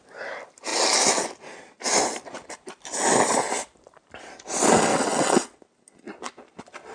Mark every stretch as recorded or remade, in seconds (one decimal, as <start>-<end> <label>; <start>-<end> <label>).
0.0-4.9 recorded; 4.9-5.6 remade; 5.6-6.9 recorded

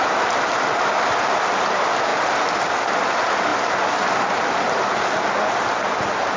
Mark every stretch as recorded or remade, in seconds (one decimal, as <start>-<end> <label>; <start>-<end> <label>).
0.0-6.4 recorded

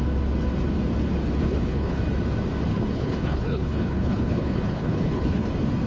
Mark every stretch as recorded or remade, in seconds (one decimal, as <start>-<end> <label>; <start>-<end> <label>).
0.0-1.4 recorded; 1.4-2.0 remade; 2.0-2.7 recorded; 2.7-5.5 remade; 5.5-5.9 recorded

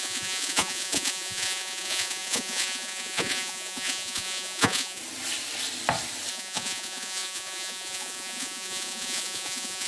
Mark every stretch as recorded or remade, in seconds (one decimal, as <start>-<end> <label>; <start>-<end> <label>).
0.0-5.0 remade; 5.0-6.3 recorded; 6.3-9.9 remade

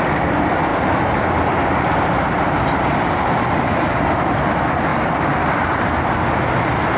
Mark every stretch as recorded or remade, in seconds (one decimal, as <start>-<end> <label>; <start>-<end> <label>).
0.0-7.0 recorded

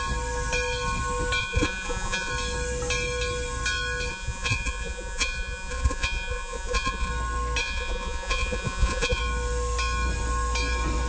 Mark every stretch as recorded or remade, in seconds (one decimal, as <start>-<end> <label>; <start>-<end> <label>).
0.0-1.4 recorded; 1.4-2.3 remade; 2.3-4.1 recorded; 4.1-7.1 remade; 7.1-7.6 recorded; 7.6-9.2 remade; 9.2-11.1 recorded

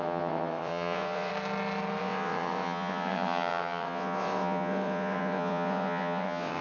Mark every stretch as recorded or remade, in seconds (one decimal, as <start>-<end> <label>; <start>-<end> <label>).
0.0-1.3 remade; 1.3-2.0 recorded; 2.0-6.6 remade

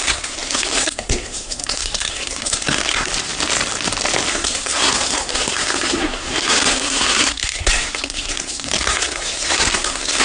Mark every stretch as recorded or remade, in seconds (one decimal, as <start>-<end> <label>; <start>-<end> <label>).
0.0-3.1 remade; 3.1-4.3 recorded; 4.3-10.2 remade